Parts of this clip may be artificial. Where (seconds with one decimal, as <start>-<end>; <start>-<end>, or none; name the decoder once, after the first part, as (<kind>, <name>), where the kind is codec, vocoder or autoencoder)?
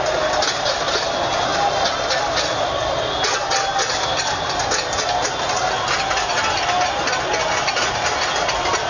none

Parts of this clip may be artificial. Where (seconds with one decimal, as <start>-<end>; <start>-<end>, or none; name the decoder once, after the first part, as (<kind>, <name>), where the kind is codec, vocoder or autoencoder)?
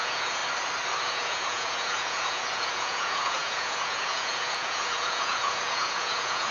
0.0-0.4 (vocoder, Vocos); 1.0-6.5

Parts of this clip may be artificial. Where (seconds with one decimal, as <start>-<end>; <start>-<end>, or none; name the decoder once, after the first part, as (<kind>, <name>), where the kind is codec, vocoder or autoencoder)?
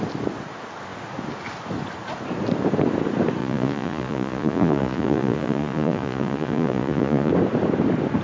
3.4-7.3 (vocoder, Vocos)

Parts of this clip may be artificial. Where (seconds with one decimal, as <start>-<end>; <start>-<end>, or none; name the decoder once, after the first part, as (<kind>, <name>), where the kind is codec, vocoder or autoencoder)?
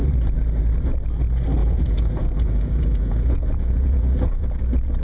1.6-4.6 (vocoder, Vocos)